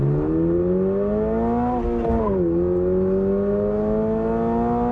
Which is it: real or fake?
real